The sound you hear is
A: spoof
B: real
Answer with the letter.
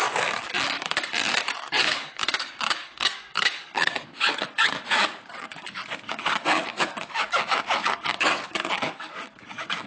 A